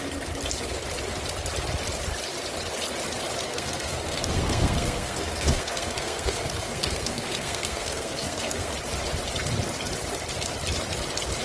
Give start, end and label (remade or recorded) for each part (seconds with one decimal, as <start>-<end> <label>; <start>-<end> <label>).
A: 0.0-3.5 recorded; 3.5-8.7 remade; 8.7-11.4 recorded